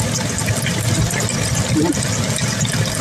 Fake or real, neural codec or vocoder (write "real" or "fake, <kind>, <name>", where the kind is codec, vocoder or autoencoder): real